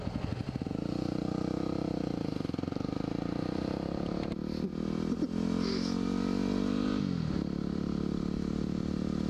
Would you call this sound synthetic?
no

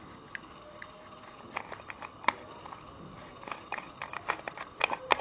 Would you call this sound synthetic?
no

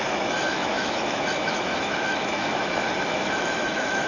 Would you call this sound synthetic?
yes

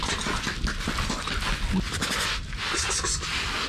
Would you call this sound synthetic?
no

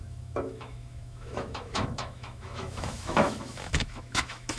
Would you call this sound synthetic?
yes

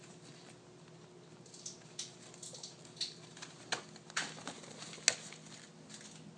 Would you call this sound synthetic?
no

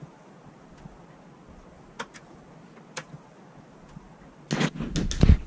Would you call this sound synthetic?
no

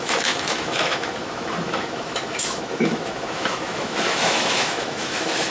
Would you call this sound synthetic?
yes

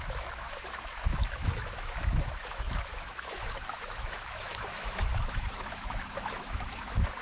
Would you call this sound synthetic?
yes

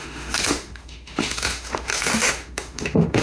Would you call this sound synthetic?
yes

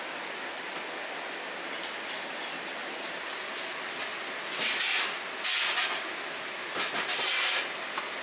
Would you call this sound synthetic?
no